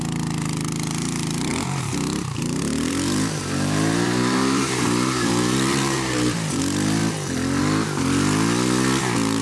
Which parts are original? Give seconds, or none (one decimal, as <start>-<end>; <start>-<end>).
0.0-1.5; 6.6-9.4